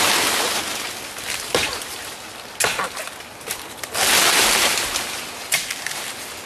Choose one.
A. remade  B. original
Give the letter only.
B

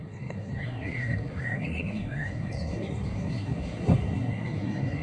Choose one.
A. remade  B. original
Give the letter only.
A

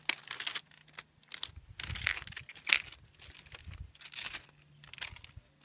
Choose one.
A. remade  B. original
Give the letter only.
B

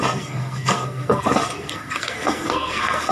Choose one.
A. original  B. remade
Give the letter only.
B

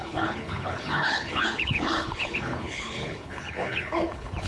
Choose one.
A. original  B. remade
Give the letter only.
B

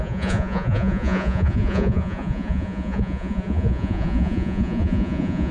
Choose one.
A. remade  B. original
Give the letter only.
A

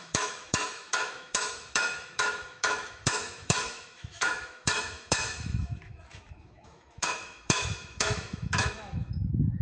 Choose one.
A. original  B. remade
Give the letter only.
B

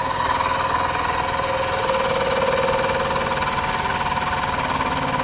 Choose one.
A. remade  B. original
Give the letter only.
B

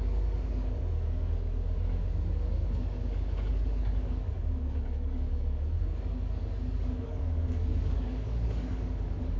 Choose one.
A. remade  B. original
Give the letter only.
A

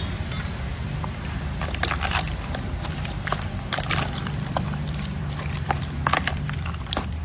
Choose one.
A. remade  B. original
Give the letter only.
A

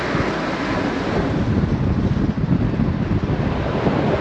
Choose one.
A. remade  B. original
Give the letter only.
B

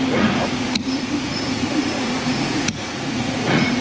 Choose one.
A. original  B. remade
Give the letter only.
B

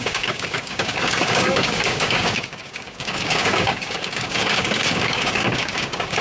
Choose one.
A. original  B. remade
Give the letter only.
B